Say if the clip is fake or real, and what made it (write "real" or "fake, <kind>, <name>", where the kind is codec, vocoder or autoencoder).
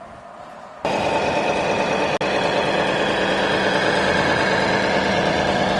real